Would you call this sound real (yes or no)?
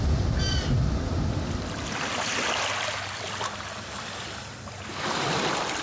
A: yes